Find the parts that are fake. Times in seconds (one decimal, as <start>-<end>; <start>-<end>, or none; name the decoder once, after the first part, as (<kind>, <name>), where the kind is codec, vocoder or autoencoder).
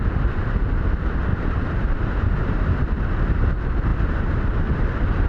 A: 1.3-3.5 (vocoder, BigVGAN v2); 3.9-4.4